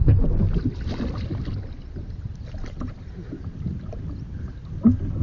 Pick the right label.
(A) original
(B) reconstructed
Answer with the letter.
A